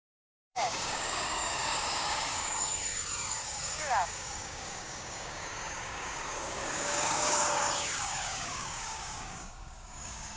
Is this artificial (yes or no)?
yes